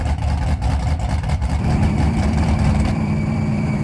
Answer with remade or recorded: remade